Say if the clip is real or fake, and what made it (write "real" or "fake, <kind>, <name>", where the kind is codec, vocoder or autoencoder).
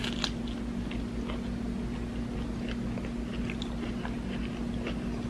real